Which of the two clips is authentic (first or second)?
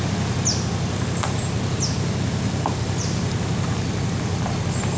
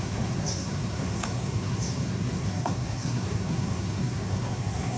first